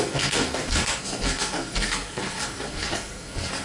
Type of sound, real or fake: fake